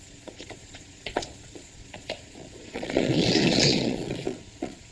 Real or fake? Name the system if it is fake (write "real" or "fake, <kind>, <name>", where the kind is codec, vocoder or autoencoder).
fake, vocoder, Vocos